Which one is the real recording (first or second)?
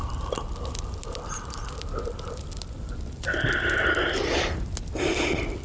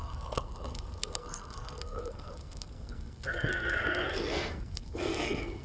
first